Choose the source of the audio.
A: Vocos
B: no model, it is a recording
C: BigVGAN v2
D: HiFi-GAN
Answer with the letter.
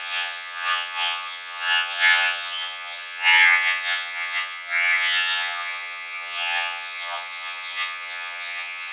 D